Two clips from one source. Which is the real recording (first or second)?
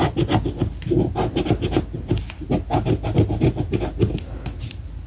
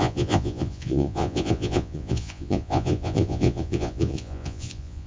first